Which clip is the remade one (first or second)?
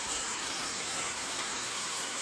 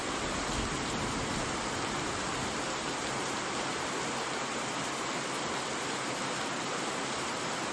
first